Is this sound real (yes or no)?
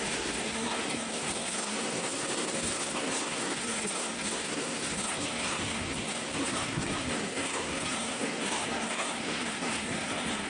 no